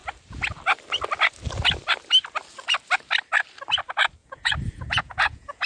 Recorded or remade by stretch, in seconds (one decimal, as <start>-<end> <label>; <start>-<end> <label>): 0.0-4.2 recorded; 4.2-5.7 remade